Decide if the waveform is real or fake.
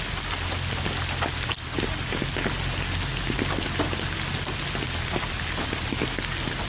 real